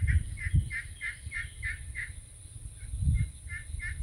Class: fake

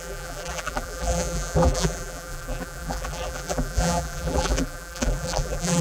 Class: fake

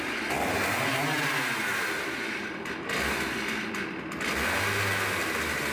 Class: real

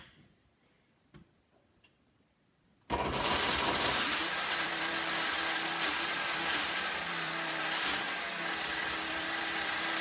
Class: fake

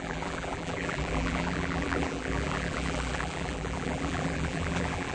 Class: fake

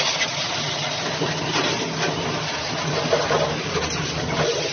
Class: real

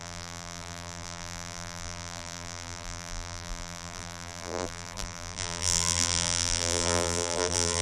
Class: fake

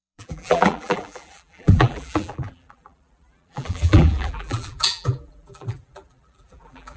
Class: fake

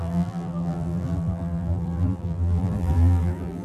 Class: fake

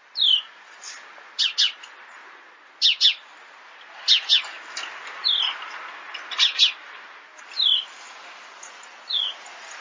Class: real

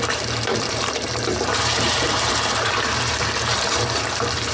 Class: fake